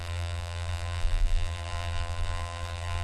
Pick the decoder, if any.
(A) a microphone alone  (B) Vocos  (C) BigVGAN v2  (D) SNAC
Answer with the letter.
C